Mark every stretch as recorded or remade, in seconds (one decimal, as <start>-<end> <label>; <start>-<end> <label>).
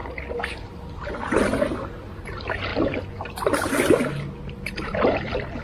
0.0-5.6 recorded